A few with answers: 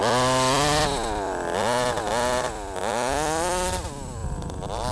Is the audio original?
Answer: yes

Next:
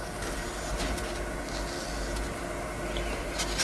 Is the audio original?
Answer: yes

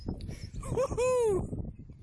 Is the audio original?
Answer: yes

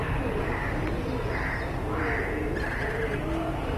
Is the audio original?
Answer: yes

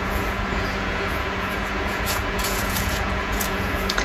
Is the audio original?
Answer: no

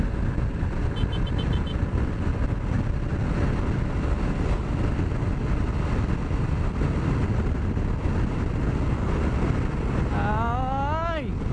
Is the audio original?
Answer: yes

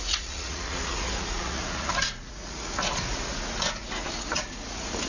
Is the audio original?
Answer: no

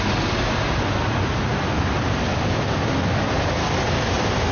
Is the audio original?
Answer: yes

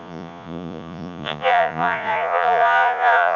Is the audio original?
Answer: no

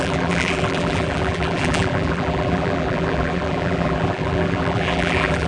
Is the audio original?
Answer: no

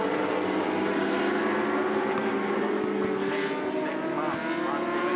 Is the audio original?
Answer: yes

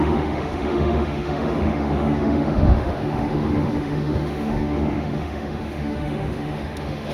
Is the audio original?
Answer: no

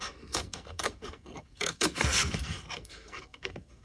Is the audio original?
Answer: no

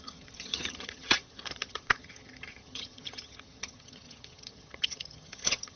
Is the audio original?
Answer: no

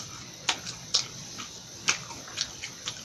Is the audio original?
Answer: no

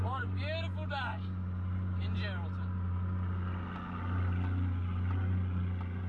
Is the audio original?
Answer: yes